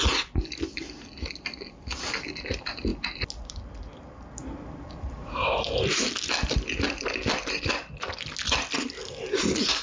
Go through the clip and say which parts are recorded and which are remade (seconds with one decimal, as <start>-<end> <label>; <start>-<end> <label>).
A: 0.0-9.8 recorded